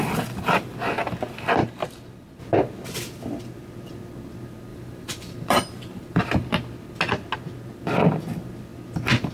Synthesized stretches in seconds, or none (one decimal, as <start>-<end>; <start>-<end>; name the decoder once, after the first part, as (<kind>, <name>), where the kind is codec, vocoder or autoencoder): 1.6-2.4 (vocoder, BigVGAN v2); 4.7-6.2